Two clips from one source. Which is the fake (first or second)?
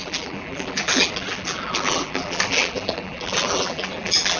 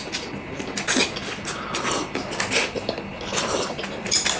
first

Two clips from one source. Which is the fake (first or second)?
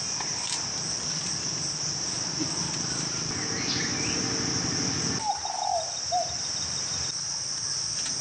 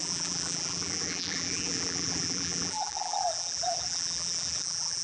second